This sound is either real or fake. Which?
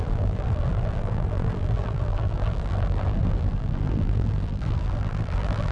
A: fake